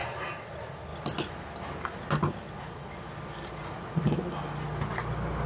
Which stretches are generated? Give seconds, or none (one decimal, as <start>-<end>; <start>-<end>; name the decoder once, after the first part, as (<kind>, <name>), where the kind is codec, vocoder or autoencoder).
none